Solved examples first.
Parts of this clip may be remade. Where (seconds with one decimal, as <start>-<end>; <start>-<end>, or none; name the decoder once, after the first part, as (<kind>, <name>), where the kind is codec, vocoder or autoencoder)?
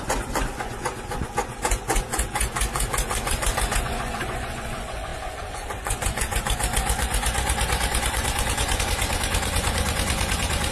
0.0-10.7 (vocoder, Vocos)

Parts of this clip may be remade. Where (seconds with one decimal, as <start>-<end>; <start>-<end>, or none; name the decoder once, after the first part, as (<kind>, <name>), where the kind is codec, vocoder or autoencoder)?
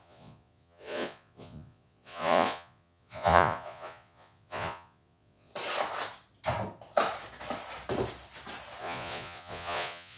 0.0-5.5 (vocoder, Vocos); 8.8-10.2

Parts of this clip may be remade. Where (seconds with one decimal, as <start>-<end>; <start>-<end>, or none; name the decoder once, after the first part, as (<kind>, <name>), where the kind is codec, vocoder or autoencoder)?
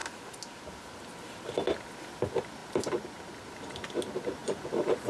4.4-5.1 (vocoder, Vocos)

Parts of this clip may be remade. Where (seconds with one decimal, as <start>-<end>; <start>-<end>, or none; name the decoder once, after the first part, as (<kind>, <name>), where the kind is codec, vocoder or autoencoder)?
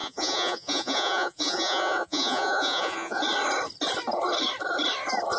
0.0-3.2 (vocoder, Vocos)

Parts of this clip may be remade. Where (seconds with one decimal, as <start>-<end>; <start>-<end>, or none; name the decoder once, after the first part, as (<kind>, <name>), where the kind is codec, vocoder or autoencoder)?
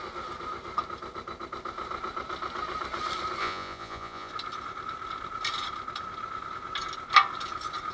3.4-4.3 (vocoder, Vocos)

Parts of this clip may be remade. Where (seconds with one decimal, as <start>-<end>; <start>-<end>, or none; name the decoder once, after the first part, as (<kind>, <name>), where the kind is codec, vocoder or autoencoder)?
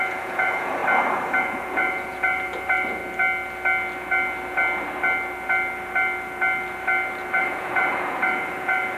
0.0-0.8 (vocoder, Vocos); 1.4-3.0; 7.4-9.0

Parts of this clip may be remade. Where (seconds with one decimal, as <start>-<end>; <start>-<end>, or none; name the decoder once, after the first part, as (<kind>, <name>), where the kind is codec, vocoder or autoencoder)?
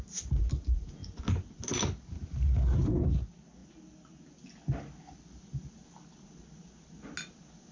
none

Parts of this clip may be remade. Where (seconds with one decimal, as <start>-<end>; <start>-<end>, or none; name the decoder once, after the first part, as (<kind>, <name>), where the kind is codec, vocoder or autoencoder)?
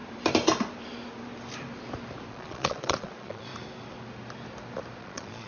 2.3-3.5 (vocoder, Vocos); 5.0-5.5